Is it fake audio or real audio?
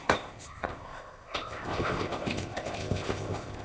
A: fake